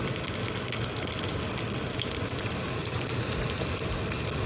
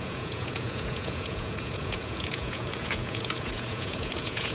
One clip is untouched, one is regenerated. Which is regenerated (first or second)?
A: second